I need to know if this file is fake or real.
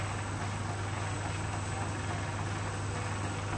real